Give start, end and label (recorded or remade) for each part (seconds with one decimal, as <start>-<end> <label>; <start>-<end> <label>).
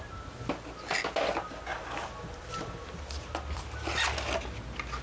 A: 0.0-5.0 recorded